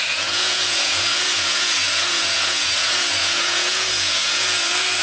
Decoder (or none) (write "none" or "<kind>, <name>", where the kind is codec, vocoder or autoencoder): vocoder, Vocos